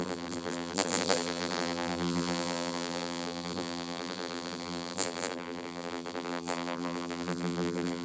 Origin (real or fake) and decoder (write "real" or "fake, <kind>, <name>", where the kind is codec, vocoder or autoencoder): fake, vocoder, BigVGAN v2